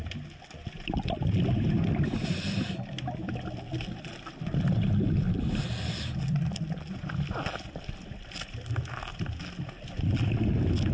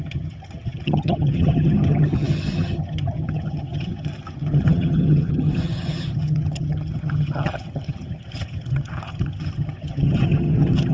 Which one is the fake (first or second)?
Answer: second